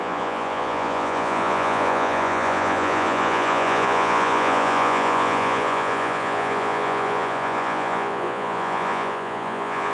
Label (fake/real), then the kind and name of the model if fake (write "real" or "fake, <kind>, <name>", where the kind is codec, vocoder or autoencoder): fake, vocoder, Vocos